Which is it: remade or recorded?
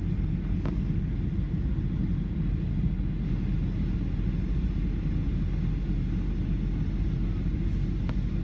recorded